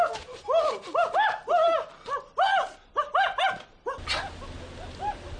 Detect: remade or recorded recorded